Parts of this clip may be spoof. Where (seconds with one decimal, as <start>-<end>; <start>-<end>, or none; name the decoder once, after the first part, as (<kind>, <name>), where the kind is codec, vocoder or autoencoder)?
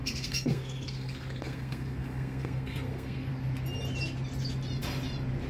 0.0-3.3 (codec, SNAC)